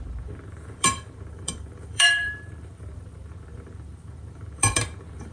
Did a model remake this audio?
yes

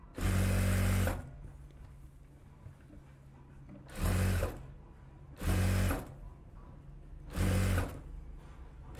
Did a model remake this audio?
no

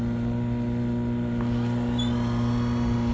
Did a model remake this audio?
no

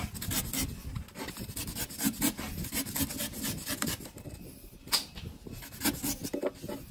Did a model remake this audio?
no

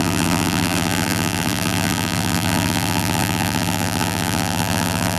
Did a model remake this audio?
yes